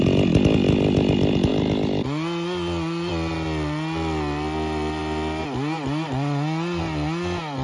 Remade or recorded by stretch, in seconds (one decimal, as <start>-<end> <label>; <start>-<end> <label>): 0.0-7.6 recorded